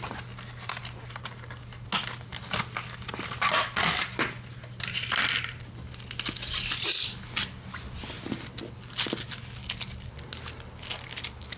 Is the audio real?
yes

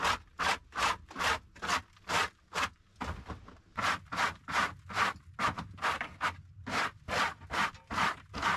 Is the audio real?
yes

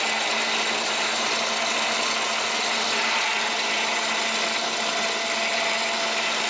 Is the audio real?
yes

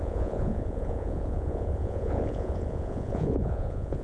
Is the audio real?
no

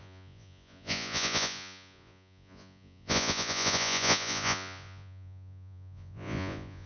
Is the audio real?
no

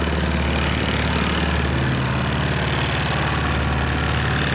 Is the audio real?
yes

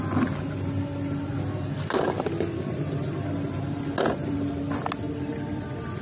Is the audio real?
yes